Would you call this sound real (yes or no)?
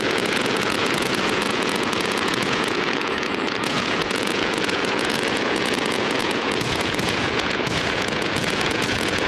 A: no